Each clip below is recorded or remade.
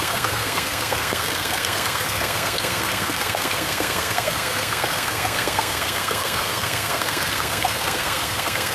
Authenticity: remade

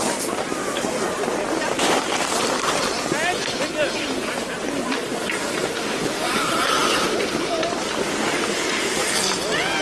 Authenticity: recorded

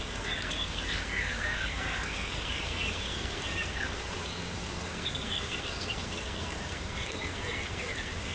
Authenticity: remade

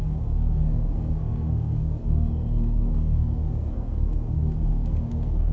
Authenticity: remade